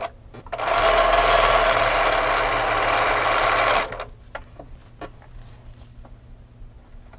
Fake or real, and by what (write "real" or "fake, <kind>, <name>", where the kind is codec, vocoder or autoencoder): real